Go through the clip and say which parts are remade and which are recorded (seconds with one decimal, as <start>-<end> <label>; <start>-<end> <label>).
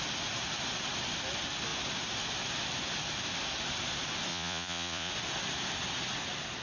0.0-4.3 recorded; 4.3-5.1 remade; 5.1-6.6 recorded